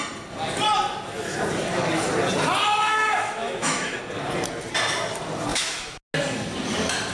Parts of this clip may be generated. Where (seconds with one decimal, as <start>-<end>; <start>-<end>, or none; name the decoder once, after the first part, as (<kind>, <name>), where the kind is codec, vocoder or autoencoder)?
2.9-4.0 (autoencoder, DAC-VAE); 5.5-6.0